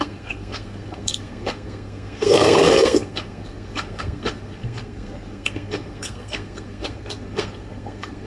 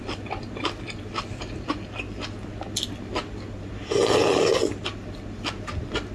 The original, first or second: second